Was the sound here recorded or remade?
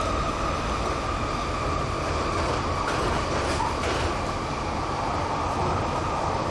recorded